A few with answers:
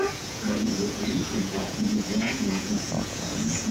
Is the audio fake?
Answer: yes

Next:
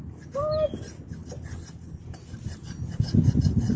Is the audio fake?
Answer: no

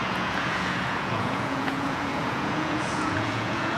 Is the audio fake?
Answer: yes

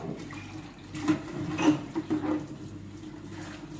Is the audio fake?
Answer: no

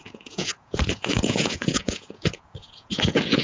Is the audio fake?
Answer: yes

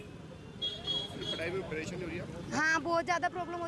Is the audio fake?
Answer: no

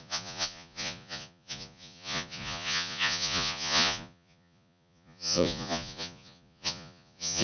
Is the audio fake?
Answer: yes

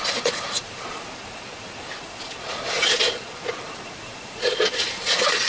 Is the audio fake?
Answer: yes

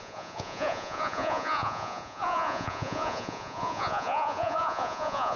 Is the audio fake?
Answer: yes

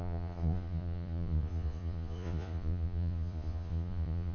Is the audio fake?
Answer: yes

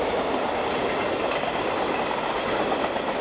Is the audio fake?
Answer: no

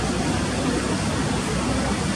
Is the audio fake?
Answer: no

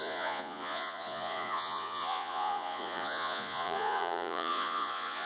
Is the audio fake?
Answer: yes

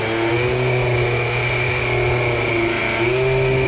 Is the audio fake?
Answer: no